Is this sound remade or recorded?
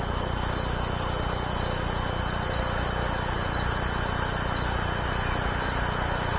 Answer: recorded